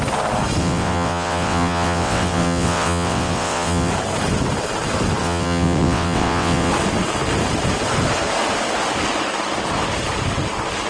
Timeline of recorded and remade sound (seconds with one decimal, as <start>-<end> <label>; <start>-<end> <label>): 0.0-0.6 recorded; 0.6-3.9 remade; 3.9-5.2 recorded; 5.2-6.7 remade; 6.7-10.9 recorded